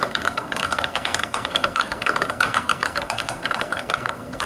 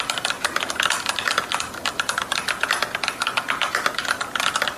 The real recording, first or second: second